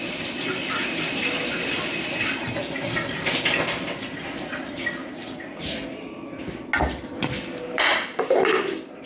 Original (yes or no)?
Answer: yes